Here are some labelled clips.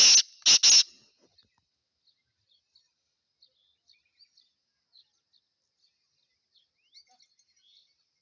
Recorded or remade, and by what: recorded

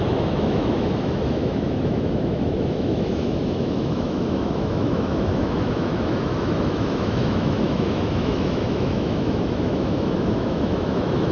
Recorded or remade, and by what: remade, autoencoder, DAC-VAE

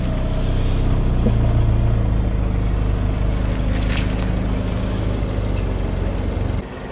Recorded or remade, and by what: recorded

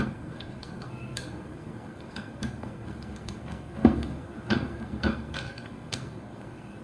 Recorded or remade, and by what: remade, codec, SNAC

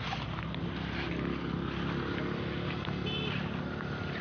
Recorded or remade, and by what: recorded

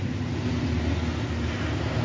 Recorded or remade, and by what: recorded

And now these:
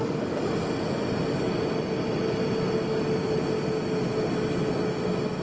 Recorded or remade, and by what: recorded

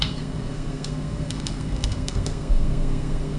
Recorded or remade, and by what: remade, codec, SNAC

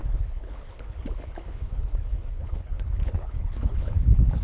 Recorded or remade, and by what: remade, codec, HILCodec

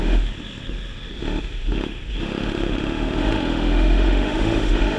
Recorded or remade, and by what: remade, autoencoder, DAC-VAE